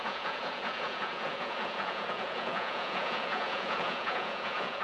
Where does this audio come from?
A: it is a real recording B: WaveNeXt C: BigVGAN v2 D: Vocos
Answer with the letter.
D